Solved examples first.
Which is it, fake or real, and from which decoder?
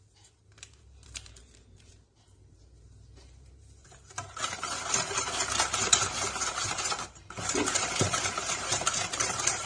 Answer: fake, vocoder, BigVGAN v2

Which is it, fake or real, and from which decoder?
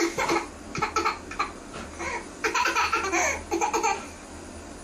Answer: real